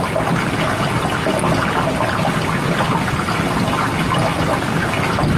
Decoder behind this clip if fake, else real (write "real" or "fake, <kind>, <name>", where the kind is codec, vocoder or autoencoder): real